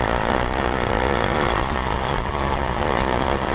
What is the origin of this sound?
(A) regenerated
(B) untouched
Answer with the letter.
A